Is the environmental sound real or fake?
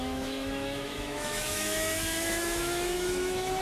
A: fake